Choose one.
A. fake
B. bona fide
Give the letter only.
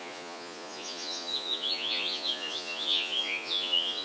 A